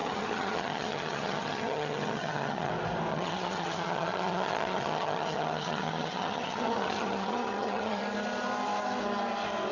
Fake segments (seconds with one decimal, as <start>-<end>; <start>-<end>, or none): 0.0-2.7; 3.1-8.0